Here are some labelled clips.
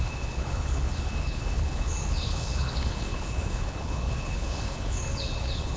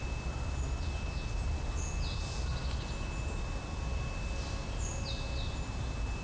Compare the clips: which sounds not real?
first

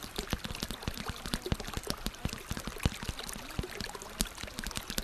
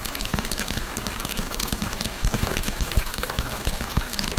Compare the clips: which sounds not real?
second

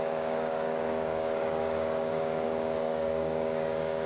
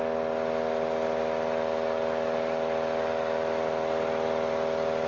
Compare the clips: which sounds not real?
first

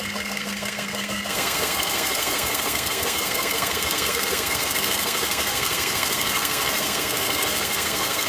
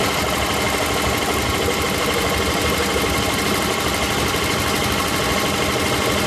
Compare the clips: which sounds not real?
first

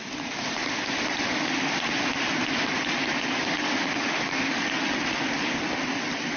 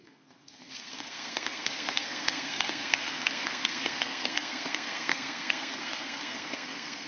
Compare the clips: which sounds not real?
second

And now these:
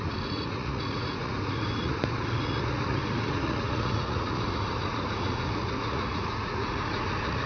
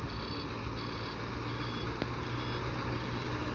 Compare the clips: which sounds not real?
first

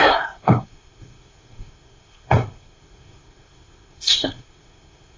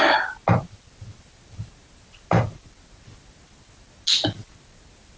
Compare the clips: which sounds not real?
first